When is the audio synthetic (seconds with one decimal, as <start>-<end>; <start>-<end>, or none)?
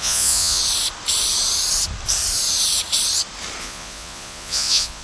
0.0-0.6; 3.6-5.0